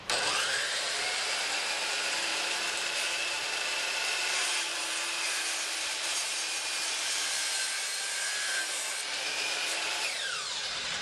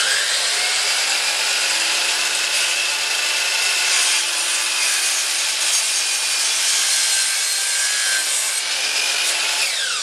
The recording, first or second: second